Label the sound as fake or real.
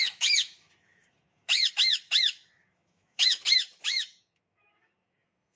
fake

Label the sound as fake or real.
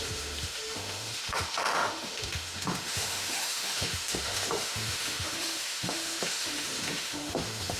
fake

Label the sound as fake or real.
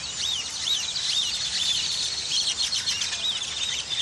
real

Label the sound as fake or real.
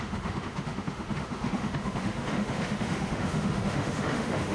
fake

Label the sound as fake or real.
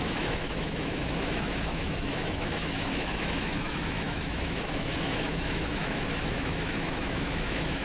fake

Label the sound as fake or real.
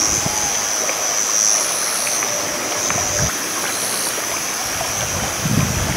real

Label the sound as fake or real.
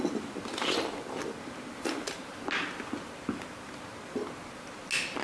real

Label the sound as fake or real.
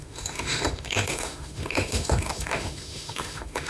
fake